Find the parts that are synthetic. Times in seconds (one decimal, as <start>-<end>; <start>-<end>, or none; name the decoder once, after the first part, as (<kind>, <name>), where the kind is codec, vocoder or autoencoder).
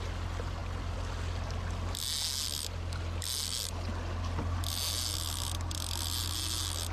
none